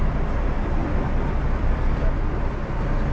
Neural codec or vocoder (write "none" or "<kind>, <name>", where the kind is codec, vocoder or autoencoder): vocoder, BigVGAN v2